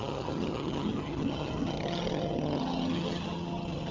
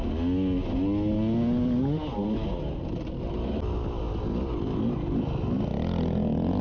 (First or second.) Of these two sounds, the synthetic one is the first